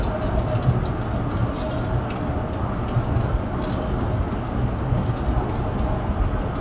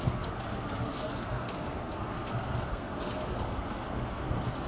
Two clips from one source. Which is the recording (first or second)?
first